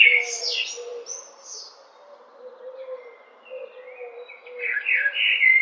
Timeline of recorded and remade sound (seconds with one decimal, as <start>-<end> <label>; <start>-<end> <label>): 0.0-5.6 recorded